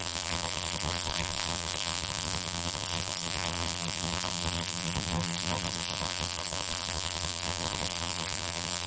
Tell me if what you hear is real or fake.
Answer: fake